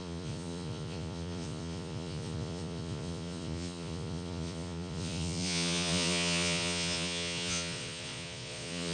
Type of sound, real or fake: fake